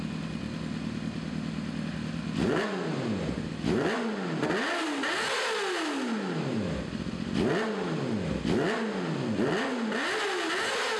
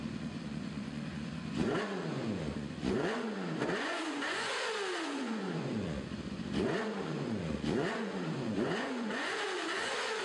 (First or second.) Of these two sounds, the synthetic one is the second